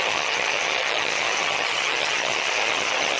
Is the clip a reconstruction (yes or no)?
yes